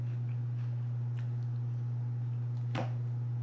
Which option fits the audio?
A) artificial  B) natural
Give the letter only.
B